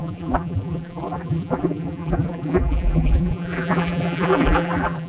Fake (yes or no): yes